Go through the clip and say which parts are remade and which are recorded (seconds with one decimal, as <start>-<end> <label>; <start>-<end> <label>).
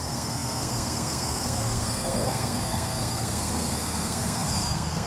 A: 0.0-5.1 remade